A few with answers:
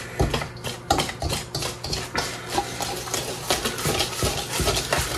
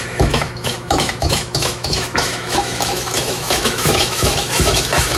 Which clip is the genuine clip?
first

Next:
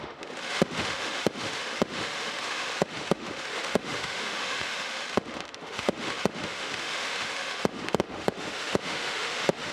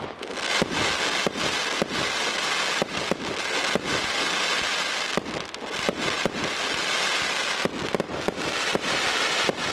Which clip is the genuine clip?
second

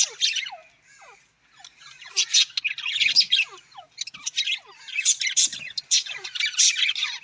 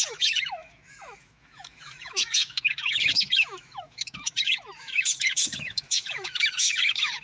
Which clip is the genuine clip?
first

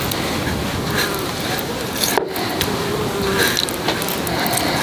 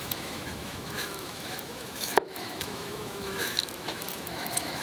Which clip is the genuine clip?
first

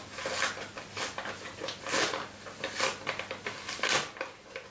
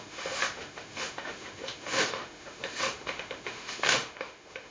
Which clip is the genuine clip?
first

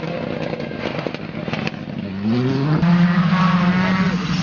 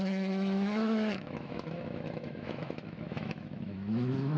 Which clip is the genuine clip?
first